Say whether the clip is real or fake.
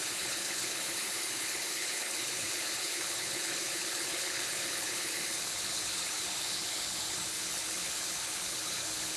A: fake